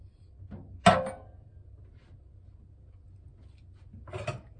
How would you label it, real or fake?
real